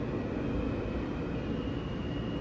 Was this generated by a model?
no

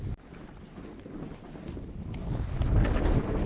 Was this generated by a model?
no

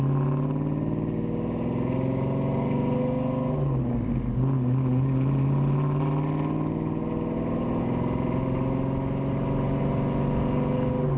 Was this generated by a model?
no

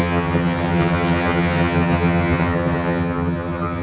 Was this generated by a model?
yes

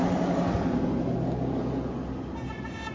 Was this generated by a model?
no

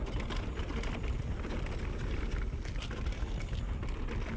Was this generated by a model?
no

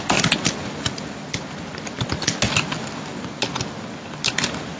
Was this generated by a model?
no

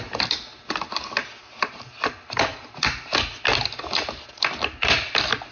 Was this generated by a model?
no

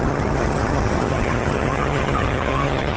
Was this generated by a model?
yes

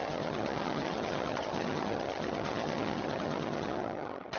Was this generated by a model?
yes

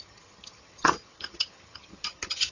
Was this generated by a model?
yes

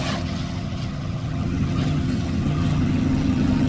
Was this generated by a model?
yes